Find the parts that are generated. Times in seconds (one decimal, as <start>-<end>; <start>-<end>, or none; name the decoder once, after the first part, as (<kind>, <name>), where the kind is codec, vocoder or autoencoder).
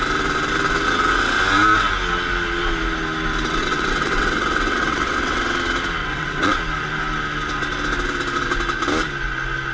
3.6-5.4 (vocoder, WaveNeXt); 6.0-6.6